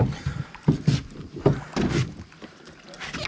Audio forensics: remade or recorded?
recorded